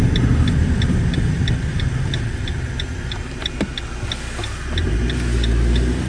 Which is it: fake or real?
real